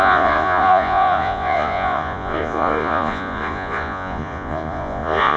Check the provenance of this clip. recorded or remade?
remade